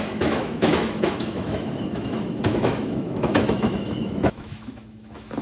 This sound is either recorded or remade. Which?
remade